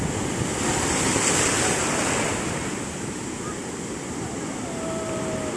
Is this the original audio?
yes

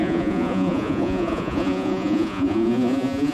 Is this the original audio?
no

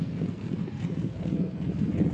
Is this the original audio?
no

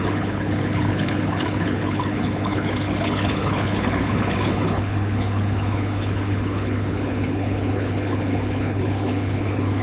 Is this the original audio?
no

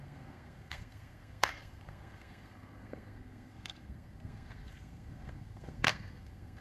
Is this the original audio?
no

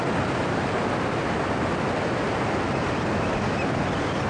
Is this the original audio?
yes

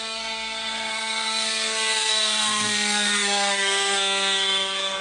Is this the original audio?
no